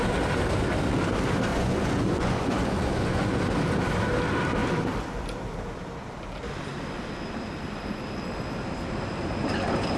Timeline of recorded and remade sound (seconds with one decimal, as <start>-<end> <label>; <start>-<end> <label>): 0.0-1.5 recorded; 1.5-3.4 remade; 3.4-10.0 recorded